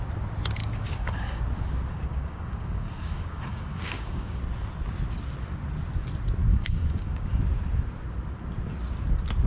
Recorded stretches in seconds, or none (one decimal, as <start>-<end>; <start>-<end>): 0.0-0.6; 1.4-2.1; 4.4-6.5; 7.4-9.5